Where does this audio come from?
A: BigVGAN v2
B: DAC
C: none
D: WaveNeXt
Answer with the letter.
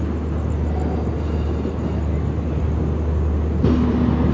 C